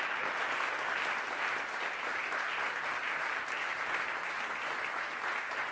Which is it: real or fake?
real